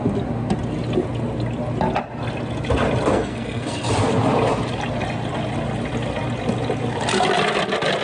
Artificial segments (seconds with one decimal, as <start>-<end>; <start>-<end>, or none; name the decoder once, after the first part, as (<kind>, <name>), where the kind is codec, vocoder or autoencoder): 3.1-3.9 (codec, SNAC)